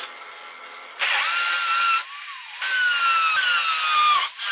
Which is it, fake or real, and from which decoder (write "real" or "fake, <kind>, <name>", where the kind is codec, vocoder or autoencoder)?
real